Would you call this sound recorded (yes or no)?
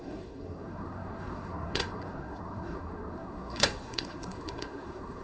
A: no